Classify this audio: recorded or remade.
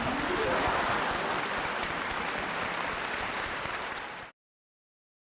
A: recorded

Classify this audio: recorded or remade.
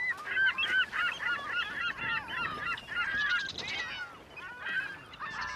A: recorded